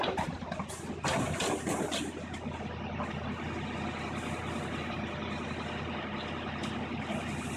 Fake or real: real